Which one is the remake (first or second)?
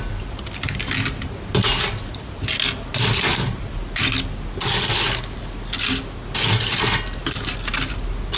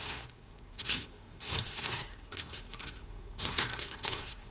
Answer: second